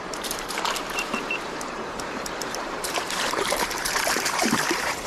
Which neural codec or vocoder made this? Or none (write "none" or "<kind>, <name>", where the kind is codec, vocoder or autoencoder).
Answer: vocoder, BigVGAN v2